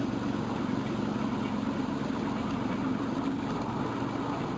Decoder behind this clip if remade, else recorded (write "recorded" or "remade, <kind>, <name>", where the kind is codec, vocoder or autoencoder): recorded